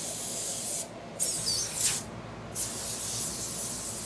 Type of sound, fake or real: real